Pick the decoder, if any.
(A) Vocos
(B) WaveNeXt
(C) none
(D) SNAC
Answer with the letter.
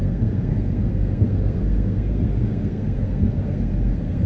D